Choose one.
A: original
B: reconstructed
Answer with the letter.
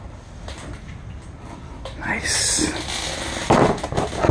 A